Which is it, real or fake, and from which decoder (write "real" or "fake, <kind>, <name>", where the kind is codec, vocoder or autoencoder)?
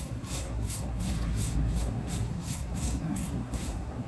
fake, codec, SNAC